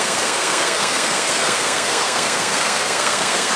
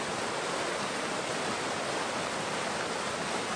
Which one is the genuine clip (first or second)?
second